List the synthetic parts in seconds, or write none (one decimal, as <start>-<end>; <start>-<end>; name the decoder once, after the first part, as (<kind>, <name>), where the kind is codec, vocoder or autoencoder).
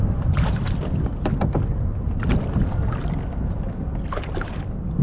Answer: 0.0-1.1 (vocoder, BigVGAN v2); 2.3-3.0; 4.4-5.0